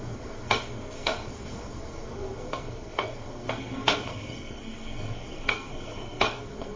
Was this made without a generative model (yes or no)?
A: no